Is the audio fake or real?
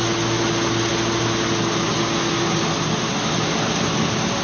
real